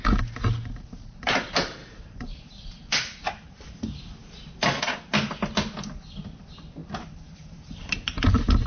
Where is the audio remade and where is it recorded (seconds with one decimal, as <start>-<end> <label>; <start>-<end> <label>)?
0.0-1.8 recorded; 1.8-3.8 remade; 3.8-4.2 recorded; 4.2-4.8 remade; 4.8-6.8 recorded; 6.8-7.8 remade; 7.8-8.7 recorded